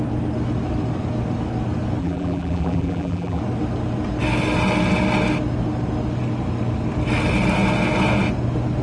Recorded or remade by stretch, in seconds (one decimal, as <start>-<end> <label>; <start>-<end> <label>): 0.0-2.0 recorded; 2.0-3.4 remade; 3.4-8.8 recorded